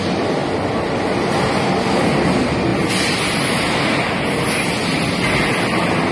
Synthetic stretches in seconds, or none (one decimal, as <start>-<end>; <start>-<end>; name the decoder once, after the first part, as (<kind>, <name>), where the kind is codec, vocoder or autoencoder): none